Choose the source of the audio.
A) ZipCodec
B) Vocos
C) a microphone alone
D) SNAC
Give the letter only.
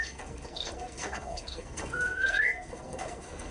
D